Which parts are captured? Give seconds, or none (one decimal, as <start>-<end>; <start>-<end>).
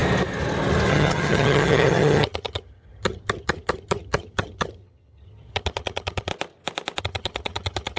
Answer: 0.0-0.9; 6.3-7.0